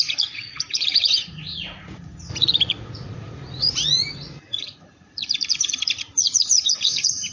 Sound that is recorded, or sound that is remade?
remade